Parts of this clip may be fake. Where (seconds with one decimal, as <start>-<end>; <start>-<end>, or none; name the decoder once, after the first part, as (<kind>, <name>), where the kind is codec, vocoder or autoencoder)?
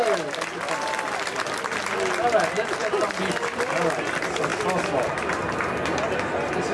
none